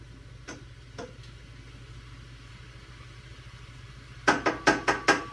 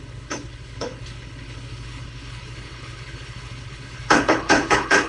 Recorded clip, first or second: first